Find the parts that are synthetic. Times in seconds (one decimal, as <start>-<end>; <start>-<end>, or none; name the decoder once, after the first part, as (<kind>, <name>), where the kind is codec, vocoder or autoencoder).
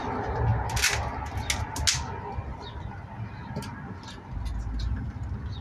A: none